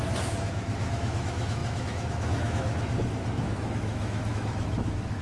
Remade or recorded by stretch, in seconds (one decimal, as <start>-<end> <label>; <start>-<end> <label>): 0.0-5.2 remade